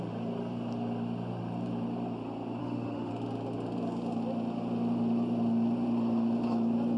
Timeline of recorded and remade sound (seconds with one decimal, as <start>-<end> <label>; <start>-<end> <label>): 0.0-2.6 recorded; 2.6-3.1 remade; 3.1-7.0 recorded